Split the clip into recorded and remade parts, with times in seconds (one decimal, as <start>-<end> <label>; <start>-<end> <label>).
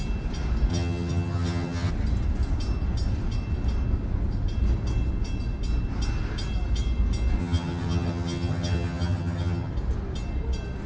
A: 0.0-0.7 recorded; 0.7-1.9 remade; 1.9-7.4 recorded; 7.4-9.7 remade; 9.7-10.9 recorded